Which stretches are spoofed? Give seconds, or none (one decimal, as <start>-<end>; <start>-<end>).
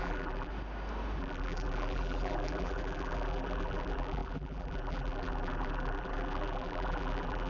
0.0-0.5; 1.2-7.5